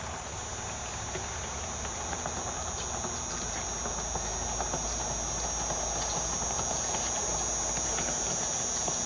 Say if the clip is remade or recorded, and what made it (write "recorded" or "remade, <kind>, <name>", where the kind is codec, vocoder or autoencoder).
recorded